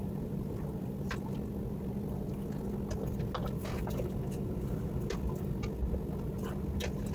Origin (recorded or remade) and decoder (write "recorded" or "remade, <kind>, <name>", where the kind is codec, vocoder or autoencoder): recorded